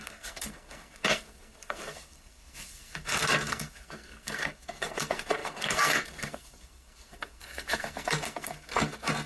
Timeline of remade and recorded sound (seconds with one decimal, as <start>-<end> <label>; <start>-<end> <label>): 0.0-9.3 remade